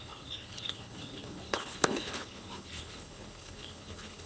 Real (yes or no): no